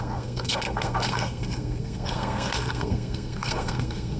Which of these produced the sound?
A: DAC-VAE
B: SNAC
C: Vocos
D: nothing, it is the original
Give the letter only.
B